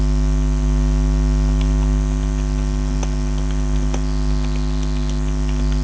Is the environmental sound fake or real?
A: real